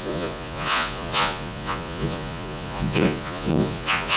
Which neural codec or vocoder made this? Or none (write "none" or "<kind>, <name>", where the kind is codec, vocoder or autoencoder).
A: vocoder, Vocos